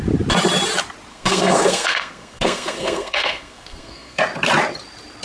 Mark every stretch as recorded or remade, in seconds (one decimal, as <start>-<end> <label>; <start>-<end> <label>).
0.0-1.1 recorded; 1.1-4.2 remade; 4.2-5.2 recorded